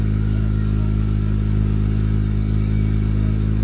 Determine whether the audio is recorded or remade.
remade